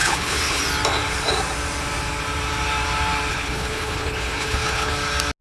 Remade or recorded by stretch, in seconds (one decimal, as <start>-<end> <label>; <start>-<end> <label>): 0.0-0.6 remade; 0.6-3.3 recorded; 3.3-4.9 remade; 4.9-5.4 recorded